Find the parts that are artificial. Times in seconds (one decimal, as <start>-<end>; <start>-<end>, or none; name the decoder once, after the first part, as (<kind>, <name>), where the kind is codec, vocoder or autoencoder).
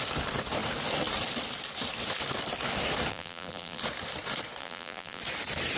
3.1-3.8 (vocoder, BigVGAN v2); 4.6-5.2